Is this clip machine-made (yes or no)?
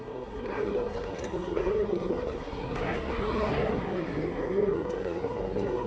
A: yes